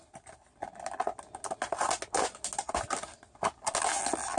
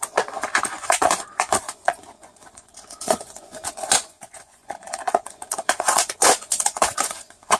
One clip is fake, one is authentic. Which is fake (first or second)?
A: second